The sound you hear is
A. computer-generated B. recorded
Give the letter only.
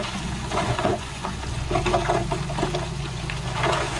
A